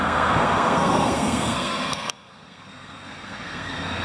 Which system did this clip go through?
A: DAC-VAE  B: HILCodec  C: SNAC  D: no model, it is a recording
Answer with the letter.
C